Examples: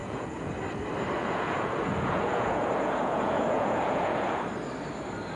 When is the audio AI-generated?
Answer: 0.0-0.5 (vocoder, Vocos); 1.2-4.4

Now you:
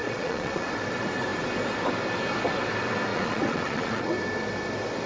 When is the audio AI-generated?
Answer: 0.0-0.7 (vocoder, Vocos); 3.1-4.1

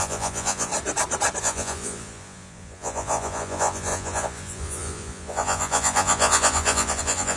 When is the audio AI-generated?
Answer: 0.0-0.7 (vocoder, Vocos); 1.4-7.4

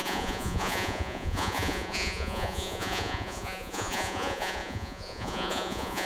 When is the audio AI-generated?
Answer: 0.0-6.1 (vocoder, Vocos)